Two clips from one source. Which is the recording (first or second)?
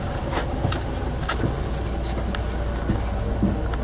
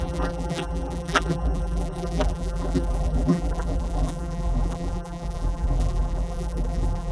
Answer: first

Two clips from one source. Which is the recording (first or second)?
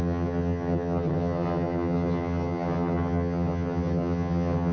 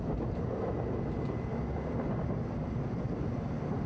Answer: second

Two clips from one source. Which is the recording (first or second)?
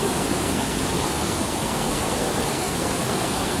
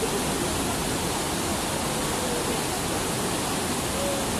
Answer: second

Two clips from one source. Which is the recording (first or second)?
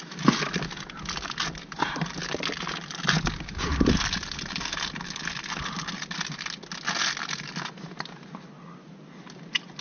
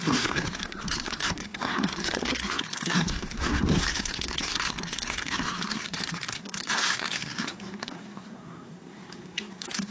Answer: first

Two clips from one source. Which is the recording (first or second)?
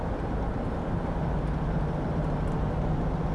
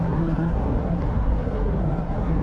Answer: first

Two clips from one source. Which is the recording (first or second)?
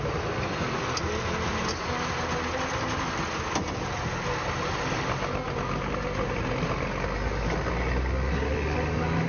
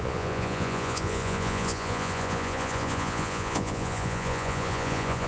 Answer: first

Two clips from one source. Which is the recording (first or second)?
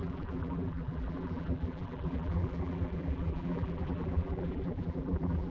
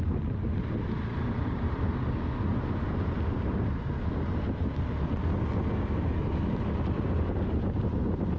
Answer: second